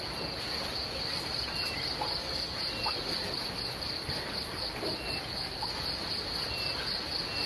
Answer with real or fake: real